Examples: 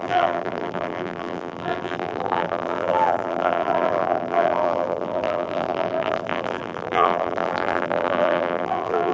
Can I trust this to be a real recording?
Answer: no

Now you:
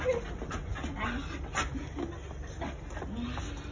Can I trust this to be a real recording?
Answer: yes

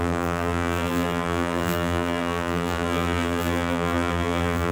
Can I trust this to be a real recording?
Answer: no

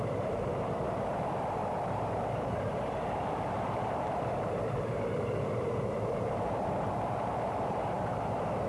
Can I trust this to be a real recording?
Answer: no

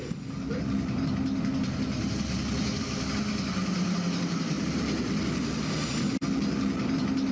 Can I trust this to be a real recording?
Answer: yes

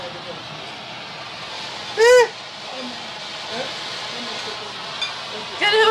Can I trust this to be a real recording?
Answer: yes